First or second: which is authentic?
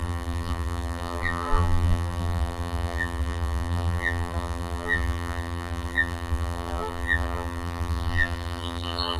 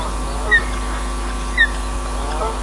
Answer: second